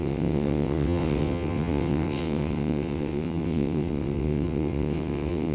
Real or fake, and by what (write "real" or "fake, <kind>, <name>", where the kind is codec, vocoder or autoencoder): fake, vocoder, WaveNeXt